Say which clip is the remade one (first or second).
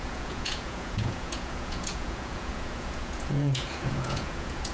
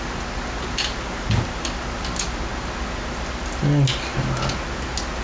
first